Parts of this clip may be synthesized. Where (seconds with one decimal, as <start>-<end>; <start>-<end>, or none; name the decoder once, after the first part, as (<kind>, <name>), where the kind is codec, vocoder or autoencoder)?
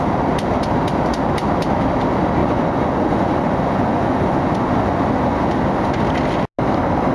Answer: 2.4-5.5 (vocoder, Vocos)